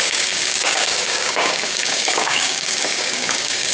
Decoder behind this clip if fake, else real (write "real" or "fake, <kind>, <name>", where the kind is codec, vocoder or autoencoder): fake, codec, DAC